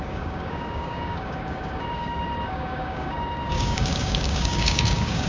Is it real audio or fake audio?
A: fake